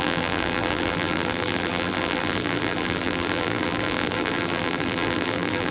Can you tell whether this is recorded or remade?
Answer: remade